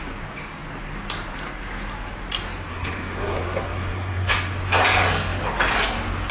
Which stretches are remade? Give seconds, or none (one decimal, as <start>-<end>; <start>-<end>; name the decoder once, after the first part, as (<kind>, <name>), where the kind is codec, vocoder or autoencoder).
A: 2.7-4.3 (codec, SNAC)